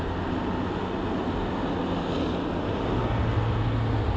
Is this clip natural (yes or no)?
yes